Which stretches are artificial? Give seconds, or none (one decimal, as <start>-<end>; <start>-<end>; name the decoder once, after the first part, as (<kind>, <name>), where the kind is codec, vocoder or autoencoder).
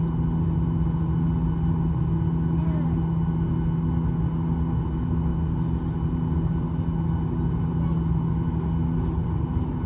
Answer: none